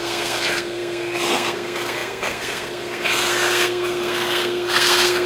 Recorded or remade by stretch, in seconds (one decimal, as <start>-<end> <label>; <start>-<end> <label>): 0.0-5.3 remade